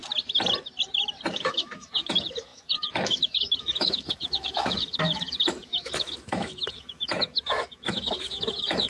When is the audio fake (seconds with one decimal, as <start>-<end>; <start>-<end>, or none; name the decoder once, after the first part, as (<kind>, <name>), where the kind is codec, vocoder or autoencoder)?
1.3-8.9 (autoencoder, DAC-VAE)